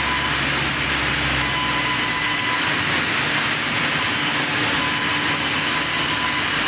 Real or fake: real